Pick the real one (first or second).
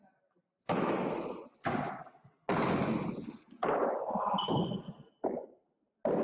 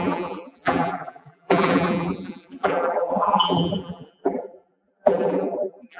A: first